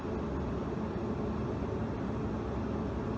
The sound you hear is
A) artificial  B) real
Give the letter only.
B